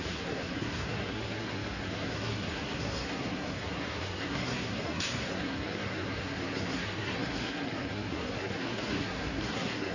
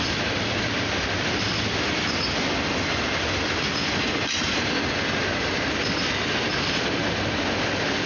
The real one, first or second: second